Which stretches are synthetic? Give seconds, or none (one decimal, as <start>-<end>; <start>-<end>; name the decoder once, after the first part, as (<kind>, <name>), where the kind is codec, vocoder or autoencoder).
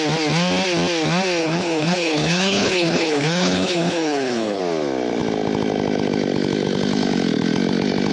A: 1.4-4.6 (codec, HILCodec)